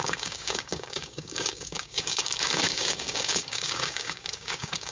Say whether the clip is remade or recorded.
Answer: remade